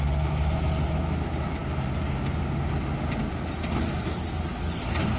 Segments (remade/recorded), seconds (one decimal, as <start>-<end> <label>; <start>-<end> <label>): 0.0-5.2 recorded